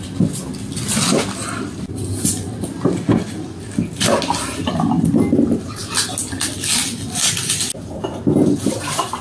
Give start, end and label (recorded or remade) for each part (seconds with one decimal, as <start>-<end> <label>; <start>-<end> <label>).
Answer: 0.0-9.2 recorded

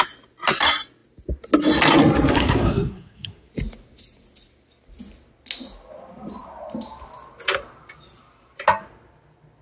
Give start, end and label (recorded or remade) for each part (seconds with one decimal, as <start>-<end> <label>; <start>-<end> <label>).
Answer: 0.0-2.3 recorded; 2.3-3.5 remade; 3.5-9.6 recorded